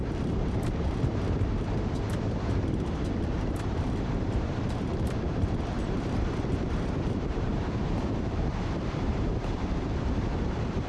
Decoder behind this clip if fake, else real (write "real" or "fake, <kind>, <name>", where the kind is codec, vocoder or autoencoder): fake, vocoder, BigVGAN v2